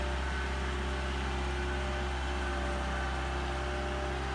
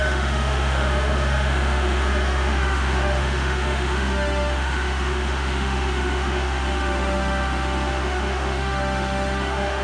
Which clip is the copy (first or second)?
second